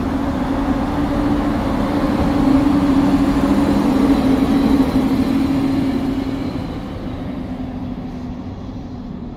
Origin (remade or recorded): recorded